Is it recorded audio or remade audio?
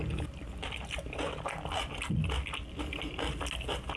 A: recorded